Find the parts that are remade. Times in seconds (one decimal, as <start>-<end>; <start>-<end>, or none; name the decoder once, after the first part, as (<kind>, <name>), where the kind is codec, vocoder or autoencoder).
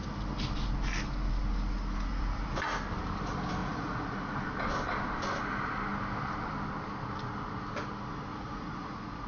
2.1-2.6 (vocoder, Vocos); 3.6-4.4; 8.3-9.3